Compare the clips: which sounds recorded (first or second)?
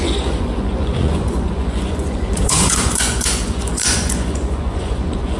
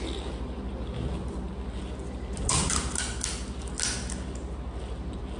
second